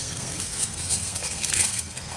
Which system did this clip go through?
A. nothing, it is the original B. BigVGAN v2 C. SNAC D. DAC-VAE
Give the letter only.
C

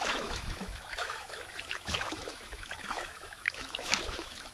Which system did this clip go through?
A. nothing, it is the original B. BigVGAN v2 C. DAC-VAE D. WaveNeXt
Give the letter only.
C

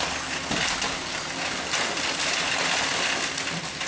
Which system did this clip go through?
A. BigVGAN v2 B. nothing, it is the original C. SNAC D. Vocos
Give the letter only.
B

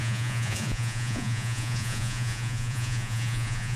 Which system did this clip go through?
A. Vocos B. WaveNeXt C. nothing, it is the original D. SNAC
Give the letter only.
A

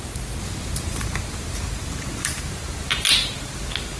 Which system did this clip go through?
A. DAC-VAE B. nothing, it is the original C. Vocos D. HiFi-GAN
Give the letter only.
B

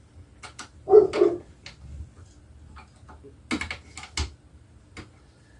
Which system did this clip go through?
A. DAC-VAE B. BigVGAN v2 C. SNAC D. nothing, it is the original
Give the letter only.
D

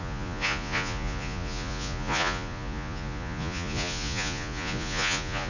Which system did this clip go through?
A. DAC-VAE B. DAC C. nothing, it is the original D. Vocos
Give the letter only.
D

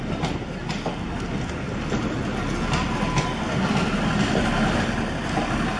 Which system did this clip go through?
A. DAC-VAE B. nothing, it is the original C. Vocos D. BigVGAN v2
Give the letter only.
B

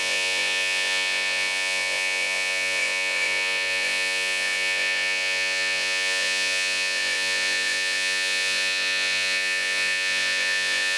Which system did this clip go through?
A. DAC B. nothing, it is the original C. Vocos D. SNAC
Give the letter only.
C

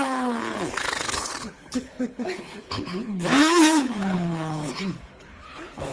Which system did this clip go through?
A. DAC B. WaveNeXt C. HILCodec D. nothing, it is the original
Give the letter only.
C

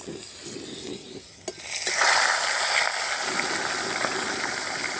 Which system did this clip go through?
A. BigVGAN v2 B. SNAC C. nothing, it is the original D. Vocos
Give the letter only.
C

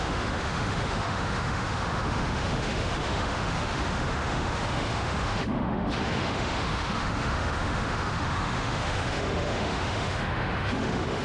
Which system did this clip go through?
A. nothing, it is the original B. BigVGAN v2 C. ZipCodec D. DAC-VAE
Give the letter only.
D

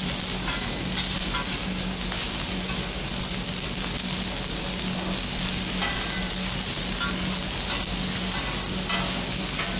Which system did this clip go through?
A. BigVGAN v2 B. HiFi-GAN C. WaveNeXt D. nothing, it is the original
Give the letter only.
D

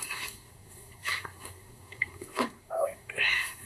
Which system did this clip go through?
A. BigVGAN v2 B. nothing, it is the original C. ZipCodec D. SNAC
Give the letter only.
D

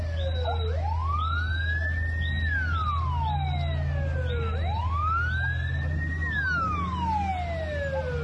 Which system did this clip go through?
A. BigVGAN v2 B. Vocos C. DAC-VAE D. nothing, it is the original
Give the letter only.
D